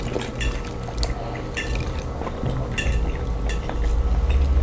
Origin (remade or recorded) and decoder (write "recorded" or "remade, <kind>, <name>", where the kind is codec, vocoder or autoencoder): recorded